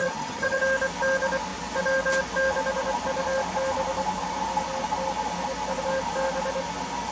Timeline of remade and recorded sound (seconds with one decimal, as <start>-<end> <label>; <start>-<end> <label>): 0.0-0.6 remade; 0.6-7.1 recorded